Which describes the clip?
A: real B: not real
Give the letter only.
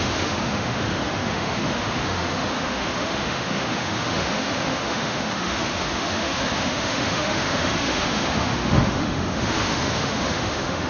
B